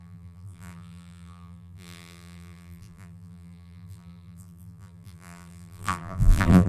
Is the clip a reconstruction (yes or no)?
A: yes